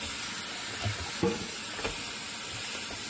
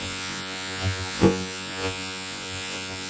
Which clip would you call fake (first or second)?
second